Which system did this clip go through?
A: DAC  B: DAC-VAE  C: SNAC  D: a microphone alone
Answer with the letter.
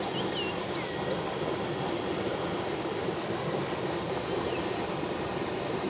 D